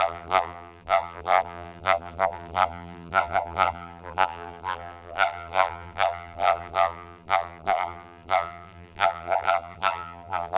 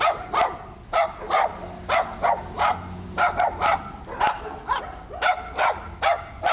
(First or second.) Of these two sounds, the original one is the second